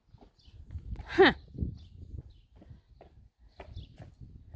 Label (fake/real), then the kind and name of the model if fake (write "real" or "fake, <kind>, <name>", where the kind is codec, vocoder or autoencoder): real